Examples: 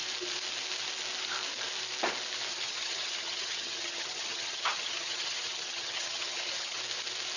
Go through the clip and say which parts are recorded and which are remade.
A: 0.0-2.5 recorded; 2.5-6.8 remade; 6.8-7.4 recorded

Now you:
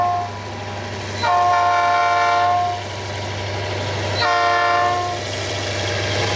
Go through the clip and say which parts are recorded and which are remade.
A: 0.0-6.4 recorded

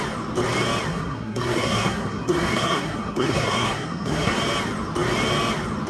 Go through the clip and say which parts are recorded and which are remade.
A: 0.0-0.9 recorded; 0.9-4.4 remade; 4.4-5.9 recorded

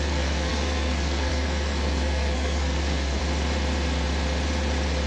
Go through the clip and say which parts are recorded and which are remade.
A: 0.0-3.2 remade; 3.2-5.1 recorded

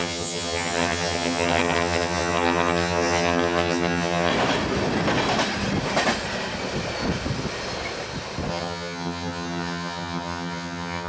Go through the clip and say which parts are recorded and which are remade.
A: 0.0-4.3 remade; 4.3-8.5 recorded; 8.5-11.1 remade

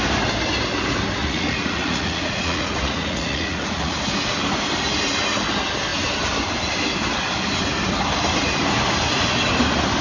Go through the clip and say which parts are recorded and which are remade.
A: 0.0-1.2 recorded; 1.2-4.0 remade; 4.0-10.0 recorded